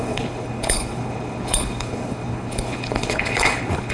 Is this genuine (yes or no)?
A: no